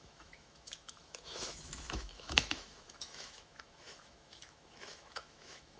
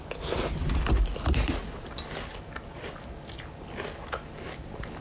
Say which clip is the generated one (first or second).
first